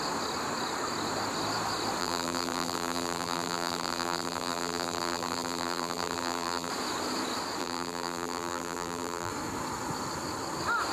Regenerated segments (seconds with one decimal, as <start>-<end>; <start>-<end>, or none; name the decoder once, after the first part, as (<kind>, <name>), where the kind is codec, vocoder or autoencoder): 2.0-6.7 (vocoder, BigVGAN v2); 7.6-9.3